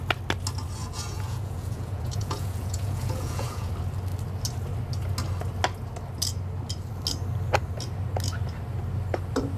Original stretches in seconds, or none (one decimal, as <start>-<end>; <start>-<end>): 0.0-0.8; 3.7-9.6